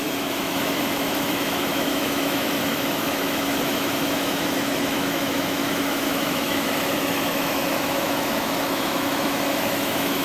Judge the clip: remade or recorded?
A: remade